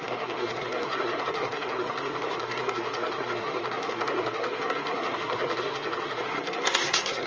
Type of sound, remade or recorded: remade